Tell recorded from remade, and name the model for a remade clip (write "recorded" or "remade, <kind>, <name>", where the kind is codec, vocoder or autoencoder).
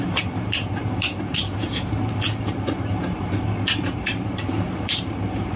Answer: remade, vocoder, BigVGAN v2